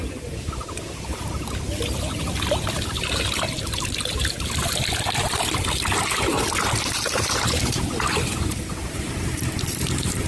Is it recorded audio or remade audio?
recorded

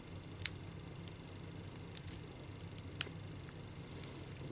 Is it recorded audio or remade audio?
recorded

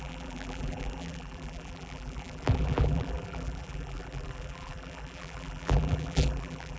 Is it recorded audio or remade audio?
remade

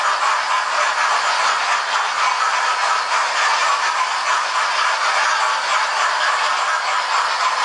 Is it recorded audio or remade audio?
recorded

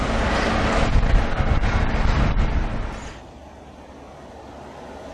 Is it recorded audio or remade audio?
recorded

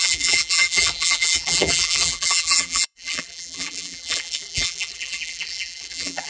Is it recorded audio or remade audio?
remade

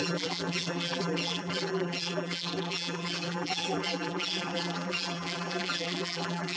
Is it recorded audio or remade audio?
remade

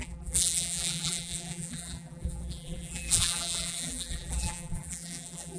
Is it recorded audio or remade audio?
remade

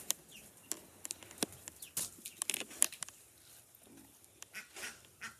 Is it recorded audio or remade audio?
recorded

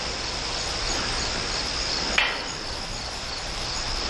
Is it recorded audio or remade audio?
recorded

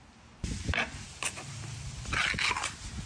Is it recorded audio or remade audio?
recorded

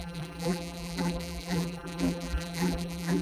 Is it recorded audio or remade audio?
remade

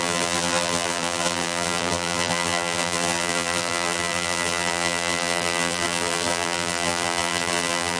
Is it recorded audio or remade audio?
remade